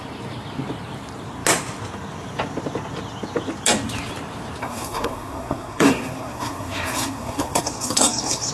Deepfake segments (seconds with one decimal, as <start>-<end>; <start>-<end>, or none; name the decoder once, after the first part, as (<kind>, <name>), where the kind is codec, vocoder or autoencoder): 4.6-8.5 (codec, SNAC)